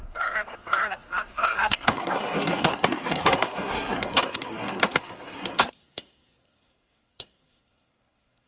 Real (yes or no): no